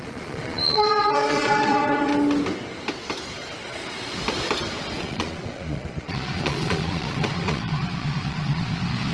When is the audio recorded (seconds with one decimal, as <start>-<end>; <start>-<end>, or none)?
2.1-5.0